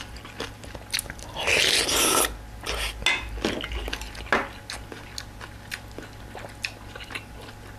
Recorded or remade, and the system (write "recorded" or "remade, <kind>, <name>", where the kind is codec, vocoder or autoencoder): recorded